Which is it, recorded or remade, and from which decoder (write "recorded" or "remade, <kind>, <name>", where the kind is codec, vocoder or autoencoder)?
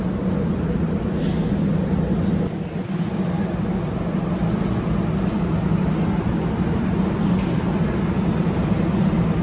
recorded